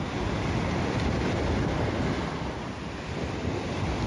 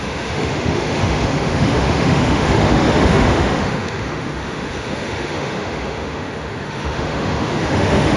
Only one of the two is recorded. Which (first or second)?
first